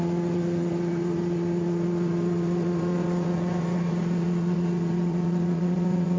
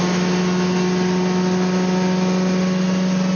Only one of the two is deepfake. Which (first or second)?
first